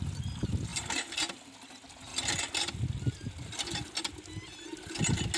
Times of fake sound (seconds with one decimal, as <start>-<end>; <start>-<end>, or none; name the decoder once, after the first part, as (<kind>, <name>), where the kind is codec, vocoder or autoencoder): none